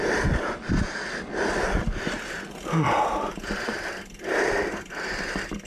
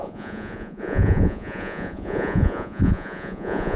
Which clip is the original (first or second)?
first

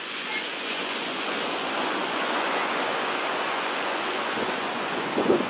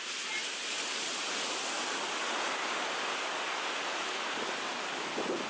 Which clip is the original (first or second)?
second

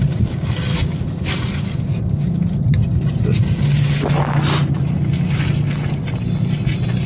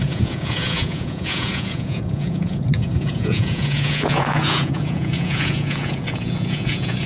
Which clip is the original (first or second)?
first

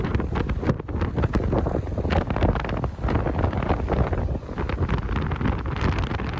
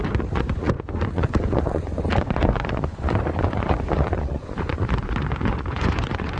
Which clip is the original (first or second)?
first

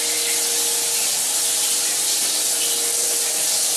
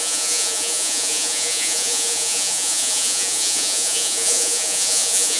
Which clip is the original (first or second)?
first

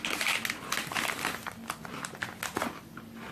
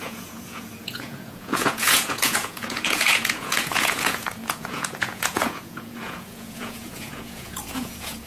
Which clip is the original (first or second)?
first